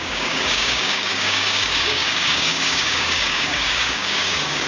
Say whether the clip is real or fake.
fake